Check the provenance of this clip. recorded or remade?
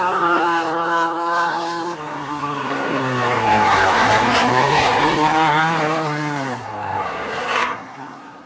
remade